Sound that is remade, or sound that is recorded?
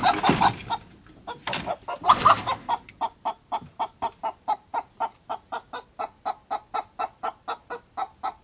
recorded